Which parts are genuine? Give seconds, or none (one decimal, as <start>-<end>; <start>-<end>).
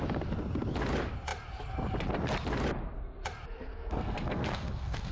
0.0-3.7